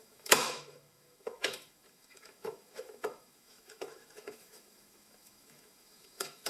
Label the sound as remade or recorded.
remade